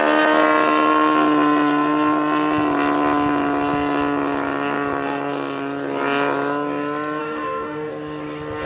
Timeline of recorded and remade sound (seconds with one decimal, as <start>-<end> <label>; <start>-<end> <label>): 0.0-7.2 recorded; 7.2-7.9 remade; 7.9-8.7 recorded